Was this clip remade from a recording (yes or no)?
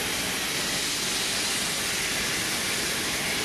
no